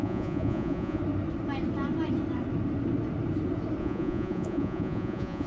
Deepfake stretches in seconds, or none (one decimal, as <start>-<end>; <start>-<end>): 0.0-1.0; 3.8-5.5